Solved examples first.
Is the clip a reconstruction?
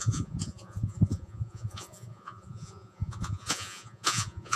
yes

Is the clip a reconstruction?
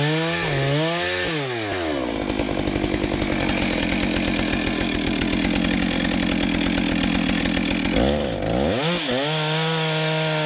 no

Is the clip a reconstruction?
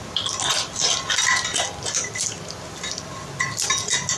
no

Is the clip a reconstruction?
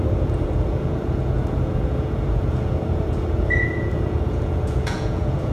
yes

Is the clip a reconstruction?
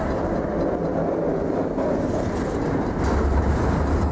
no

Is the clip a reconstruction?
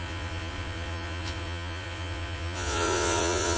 yes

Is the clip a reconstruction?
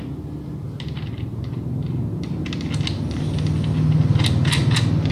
no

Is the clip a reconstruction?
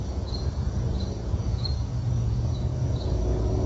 yes